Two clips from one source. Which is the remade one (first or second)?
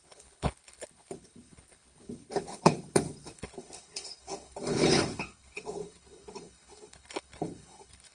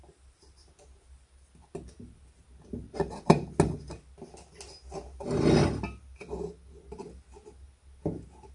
first